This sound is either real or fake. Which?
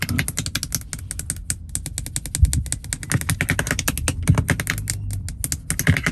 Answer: real